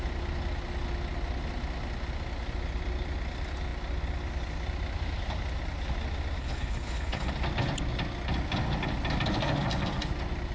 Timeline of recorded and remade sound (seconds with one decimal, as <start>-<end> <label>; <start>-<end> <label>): 0.0-6.4 recorded; 6.4-7.3 remade; 7.3-10.5 recorded